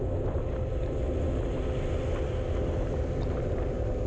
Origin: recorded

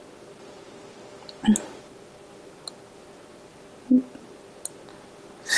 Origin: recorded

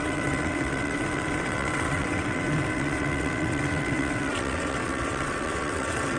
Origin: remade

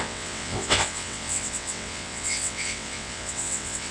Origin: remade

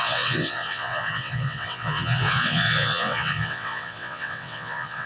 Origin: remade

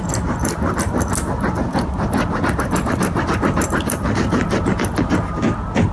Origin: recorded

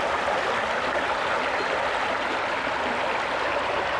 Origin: recorded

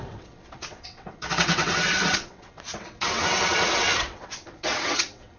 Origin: remade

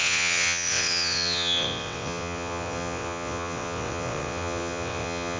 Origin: remade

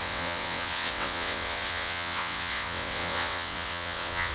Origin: remade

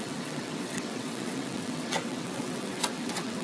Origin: remade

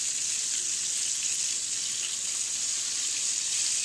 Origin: recorded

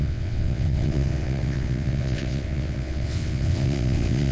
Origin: remade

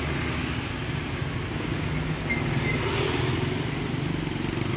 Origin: recorded